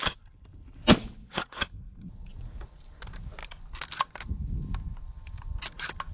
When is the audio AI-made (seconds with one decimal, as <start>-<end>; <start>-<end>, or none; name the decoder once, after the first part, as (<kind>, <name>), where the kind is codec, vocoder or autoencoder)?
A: 1.2-2.7 (vocoder, Vocos)